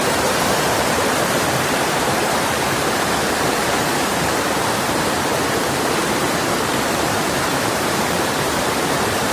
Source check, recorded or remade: remade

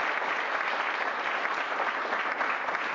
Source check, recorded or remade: recorded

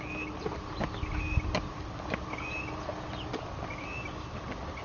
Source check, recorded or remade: recorded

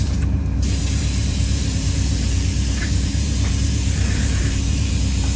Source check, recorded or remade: remade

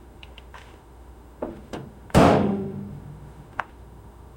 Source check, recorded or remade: remade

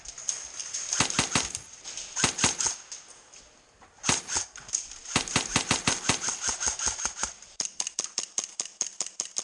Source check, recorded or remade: recorded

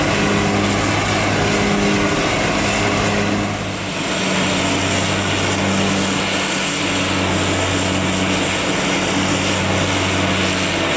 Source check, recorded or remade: recorded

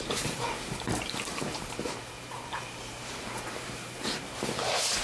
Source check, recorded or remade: remade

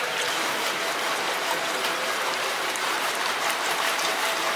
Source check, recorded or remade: remade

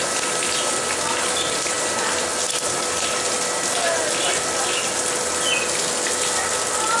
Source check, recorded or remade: recorded